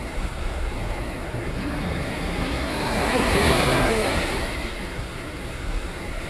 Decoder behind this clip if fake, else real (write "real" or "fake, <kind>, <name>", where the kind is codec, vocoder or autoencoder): fake, codec, SNAC